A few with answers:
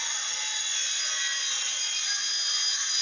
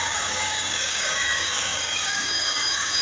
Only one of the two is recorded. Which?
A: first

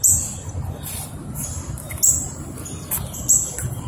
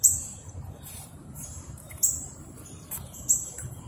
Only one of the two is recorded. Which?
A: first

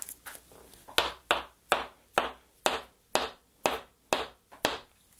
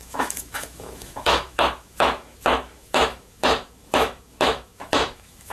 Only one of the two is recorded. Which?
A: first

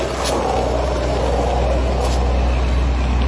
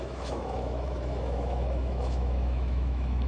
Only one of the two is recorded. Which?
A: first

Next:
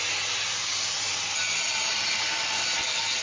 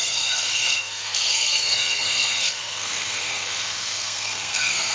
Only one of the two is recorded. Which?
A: first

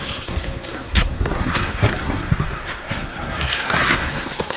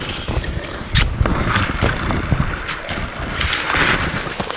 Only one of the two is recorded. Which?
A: second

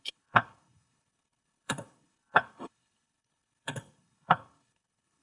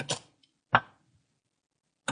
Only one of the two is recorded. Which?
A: second